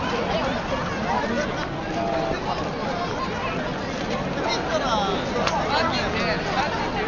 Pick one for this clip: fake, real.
real